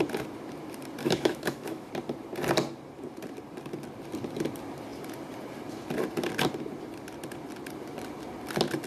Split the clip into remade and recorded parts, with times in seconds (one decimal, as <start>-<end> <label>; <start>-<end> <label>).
0.0-1.0 recorded; 1.0-1.9 remade; 1.9-8.9 recorded